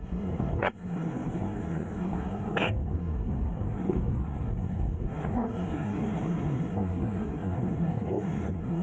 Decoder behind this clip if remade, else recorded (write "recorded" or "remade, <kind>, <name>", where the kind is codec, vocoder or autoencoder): remade, codec, SNAC